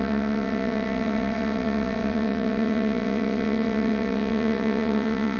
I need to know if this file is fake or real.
fake